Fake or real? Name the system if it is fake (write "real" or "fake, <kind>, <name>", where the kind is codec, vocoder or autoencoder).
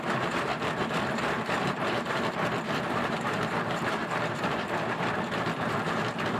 fake, vocoder, BigVGAN v2